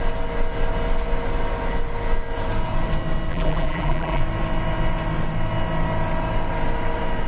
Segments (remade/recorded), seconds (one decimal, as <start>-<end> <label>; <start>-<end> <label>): 0.0-3.3 recorded; 3.3-4.2 remade; 4.2-7.3 recorded